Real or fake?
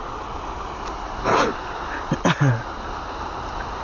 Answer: real